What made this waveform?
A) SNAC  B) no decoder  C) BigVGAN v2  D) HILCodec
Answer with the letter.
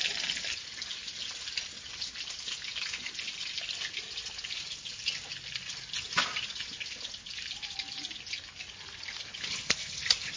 B